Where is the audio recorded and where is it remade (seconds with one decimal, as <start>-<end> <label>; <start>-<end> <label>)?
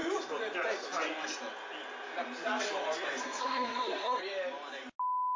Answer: 0.0-3.2 recorded; 3.2-4.2 remade; 4.2-5.4 recorded